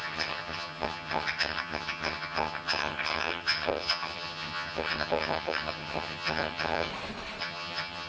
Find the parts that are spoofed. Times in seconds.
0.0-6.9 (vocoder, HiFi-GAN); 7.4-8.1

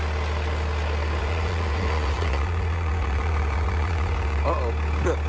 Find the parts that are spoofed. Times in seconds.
1.2-4.4 (vocoder, Vocos)

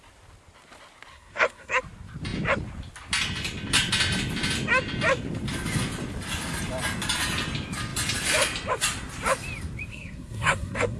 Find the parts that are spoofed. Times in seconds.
1.1-1.8 (codec, SNAC); 9.9-11.0

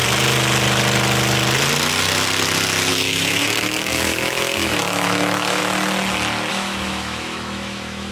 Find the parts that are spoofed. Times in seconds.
2.9-5.6 (autoencoder, DAC-VAE); 6.5-8.1

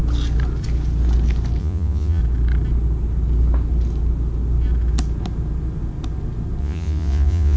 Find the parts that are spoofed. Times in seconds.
1.6-2.2 (vocoder, Vocos); 6.6-7.6

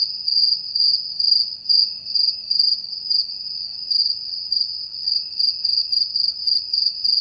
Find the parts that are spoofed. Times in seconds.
none